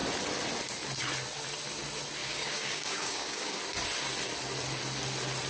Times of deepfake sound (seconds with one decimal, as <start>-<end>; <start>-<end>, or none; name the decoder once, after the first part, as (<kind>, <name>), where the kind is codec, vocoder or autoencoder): 2.2-3.6 (codec, DAC)

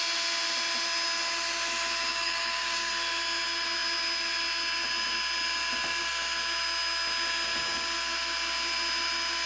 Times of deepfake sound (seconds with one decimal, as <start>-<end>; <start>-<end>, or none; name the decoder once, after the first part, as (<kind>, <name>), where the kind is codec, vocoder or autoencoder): 2.1-2.9 (codec, DAC)

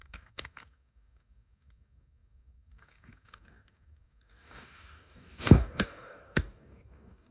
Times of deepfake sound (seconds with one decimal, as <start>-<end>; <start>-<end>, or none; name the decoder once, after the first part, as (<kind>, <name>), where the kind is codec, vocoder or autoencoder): 0.0-7.3 (codec, DAC)

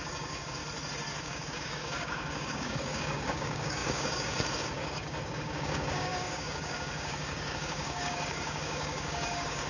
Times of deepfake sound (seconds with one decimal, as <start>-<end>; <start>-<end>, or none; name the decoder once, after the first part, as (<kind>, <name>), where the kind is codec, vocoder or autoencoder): 0.0-0.6 (codec, DAC); 1.2-9.7

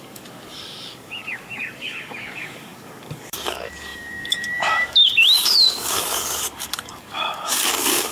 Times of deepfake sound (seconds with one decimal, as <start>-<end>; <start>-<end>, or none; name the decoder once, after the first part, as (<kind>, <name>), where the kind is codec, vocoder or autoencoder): 0.0-8.1 (codec, DAC)